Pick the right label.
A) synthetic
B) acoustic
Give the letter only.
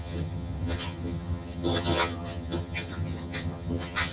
A